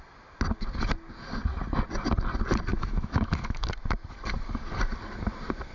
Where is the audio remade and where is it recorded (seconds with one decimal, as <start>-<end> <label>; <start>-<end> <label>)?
0.0-2.7 recorded; 2.7-3.7 remade; 3.7-5.7 recorded